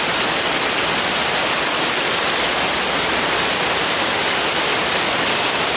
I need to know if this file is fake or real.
real